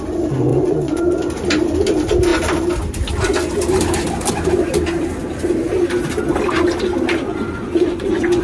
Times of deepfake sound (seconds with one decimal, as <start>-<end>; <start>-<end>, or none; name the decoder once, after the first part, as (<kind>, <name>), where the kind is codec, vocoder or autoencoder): 0.5-1.0 (vocoder, Vocos); 7.3-8.4